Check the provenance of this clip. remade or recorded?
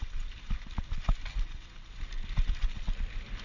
recorded